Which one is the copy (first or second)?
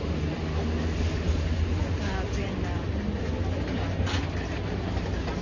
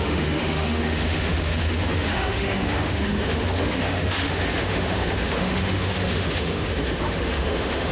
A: second